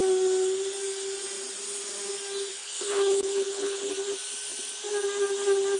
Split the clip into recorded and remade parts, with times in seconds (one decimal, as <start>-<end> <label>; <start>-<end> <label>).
0.0-2.5 recorded; 2.5-3.9 remade; 3.9-5.8 recorded